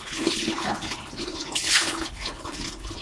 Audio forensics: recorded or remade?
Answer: remade